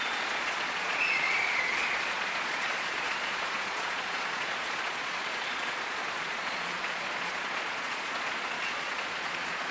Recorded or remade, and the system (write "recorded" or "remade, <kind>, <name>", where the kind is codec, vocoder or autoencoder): remade, vocoder, Vocos